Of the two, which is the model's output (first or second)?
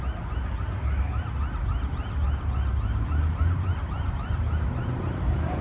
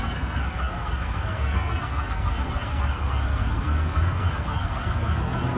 second